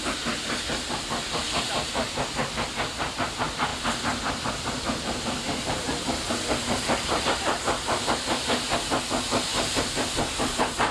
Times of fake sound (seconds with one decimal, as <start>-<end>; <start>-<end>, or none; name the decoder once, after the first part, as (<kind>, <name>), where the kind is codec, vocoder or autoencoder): 3.7-7.2 (vocoder, BigVGAN v2); 9.5-10.4